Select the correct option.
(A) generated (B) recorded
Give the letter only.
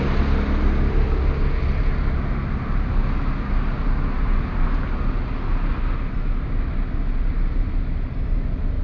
B